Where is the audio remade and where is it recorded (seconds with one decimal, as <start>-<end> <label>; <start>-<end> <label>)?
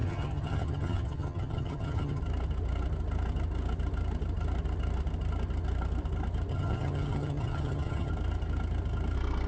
0.0-2.2 remade; 2.2-6.5 recorded; 6.5-8.1 remade; 8.1-9.5 recorded